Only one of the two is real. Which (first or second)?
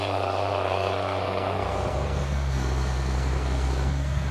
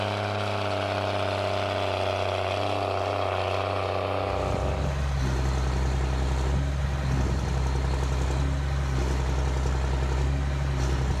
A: second